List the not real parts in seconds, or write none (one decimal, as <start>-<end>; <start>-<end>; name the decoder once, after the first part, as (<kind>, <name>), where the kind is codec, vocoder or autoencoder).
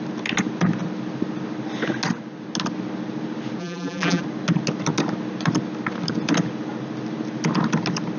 3.6-4.2 (vocoder, BigVGAN v2)